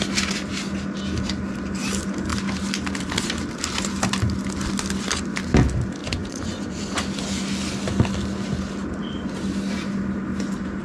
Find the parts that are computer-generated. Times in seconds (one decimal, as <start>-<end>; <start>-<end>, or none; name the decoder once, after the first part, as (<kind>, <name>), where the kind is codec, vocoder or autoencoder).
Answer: 6.0-7.0 (vocoder, Vocos)